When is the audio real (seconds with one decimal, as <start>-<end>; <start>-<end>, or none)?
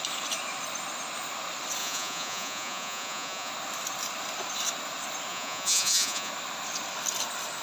0.0-1.8; 3.5-5.3; 6.3-7.6